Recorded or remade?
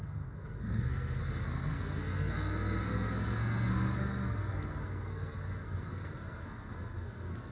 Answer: remade